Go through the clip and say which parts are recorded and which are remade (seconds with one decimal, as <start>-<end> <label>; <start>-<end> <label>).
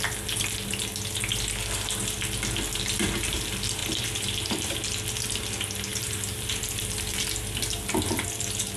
0.0-3.8 recorded; 3.8-4.7 remade; 4.7-5.9 recorded; 5.9-7.2 remade; 7.2-8.8 recorded